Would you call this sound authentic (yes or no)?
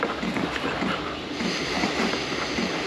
yes